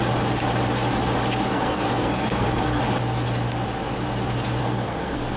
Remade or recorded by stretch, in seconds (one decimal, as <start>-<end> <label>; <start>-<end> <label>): 0.0-1.5 recorded; 1.5-2.8 remade; 2.8-4.6 recorded; 4.6-5.4 remade